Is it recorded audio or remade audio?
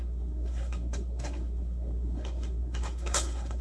remade